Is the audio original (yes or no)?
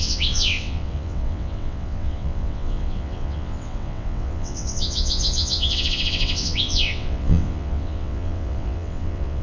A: no